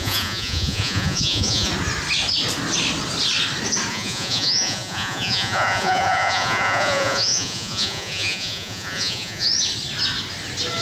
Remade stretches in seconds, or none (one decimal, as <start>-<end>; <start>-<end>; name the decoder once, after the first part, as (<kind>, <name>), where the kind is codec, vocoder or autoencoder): 0.0-1.7 (vocoder, Vocos); 3.9-9.5